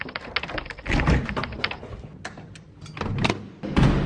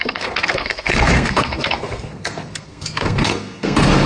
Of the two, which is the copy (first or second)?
second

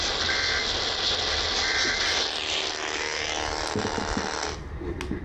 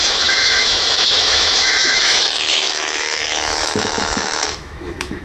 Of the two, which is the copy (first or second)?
second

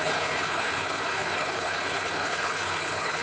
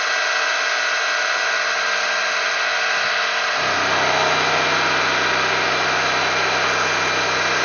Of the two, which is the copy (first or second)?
first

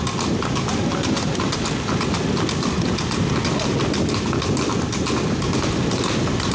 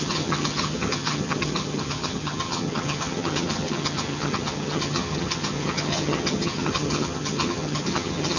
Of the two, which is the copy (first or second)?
second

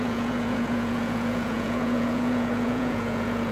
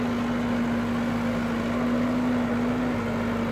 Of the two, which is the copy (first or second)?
first